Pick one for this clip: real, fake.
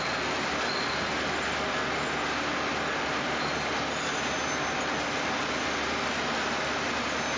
real